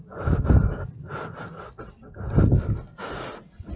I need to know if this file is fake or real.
real